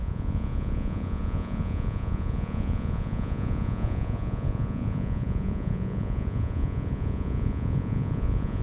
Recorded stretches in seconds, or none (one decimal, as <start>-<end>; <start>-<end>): none